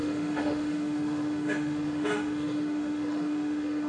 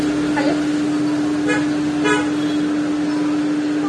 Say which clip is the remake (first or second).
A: first